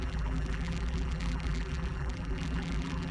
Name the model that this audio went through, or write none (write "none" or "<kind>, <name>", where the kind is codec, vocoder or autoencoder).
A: vocoder, BigVGAN v2